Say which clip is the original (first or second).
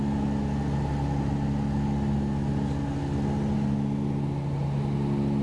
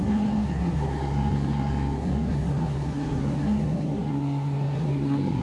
first